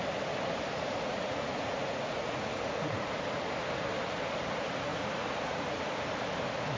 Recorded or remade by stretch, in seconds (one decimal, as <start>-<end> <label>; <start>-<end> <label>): 0.0-0.7 recorded; 0.7-3.1 remade; 3.1-4.9 recorded; 4.9-5.8 remade; 5.8-6.8 recorded